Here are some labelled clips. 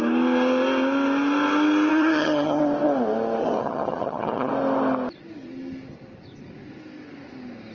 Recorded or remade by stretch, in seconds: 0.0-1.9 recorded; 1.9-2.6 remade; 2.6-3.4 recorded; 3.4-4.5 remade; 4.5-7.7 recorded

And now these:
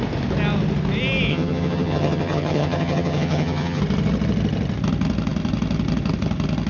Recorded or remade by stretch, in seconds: 0.0-1.3 recorded; 1.3-3.8 remade; 3.8-6.7 recorded

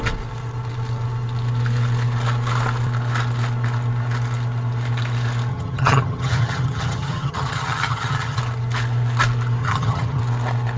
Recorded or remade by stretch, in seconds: 0.0-5.5 recorded; 5.5-8.4 remade; 8.4-9.6 recorded; 9.6-10.2 remade; 10.2-10.8 recorded

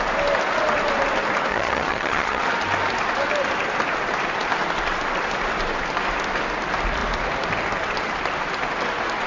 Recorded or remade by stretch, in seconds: 0.0-1.5 recorded; 1.5-2.4 remade; 2.4-9.3 recorded

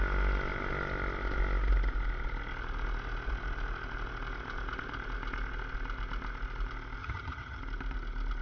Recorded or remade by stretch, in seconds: 0.0-7.0 recorded; 7.0-7.6 remade; 7.6-8.4 recorded

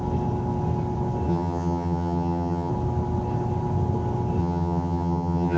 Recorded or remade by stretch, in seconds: 0.0-1.3 recorded; 1.3-2.7 remade; 2.7-4.4 recorded; 4.4-5.6 remade

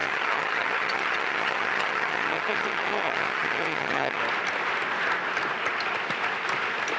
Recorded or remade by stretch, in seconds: 0.0-4.2 remade; 4.2-7.0 recorded

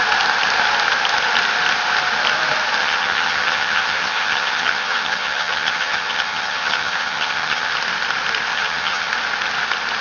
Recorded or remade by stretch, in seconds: 0.0-2.8 recorded; 2.8-7.7 remade; 7.7-8.5 recorded; 8.5-9.1 remade; 9.1-10.0 recorded